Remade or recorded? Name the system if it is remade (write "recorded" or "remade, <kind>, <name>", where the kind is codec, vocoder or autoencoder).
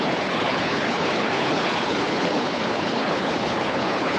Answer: remade, codec, HILCodec